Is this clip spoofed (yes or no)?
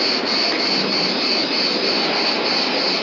no